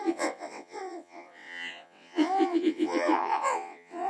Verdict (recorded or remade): remade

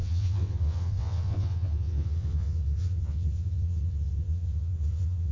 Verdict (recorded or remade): remade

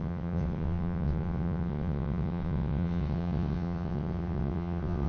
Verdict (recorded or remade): remade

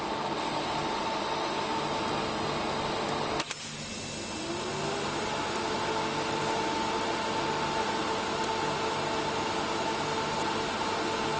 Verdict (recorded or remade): recorded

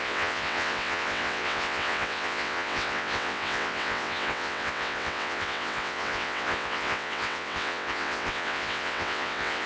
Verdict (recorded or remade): remade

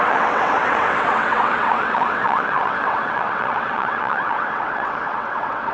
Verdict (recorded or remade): remade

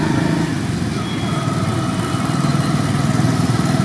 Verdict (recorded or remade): recorded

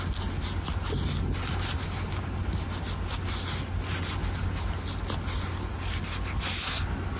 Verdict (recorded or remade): recorded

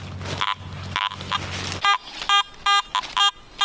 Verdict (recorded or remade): recorded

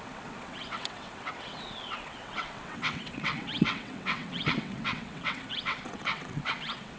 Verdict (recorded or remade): remade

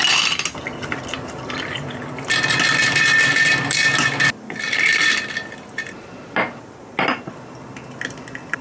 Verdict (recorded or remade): recorded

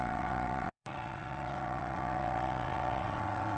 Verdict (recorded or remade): remade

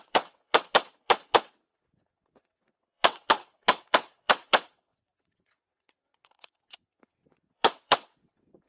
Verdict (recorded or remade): remade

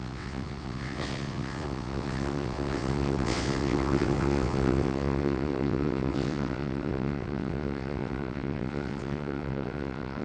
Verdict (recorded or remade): remade